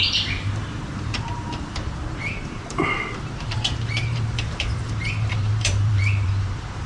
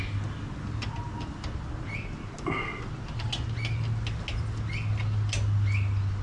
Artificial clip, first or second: first